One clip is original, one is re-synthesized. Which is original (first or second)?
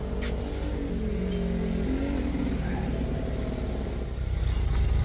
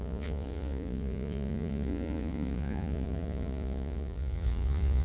first